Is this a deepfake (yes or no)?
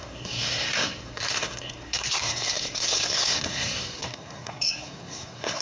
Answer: yes